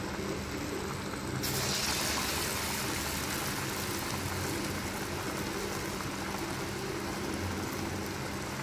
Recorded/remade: recorded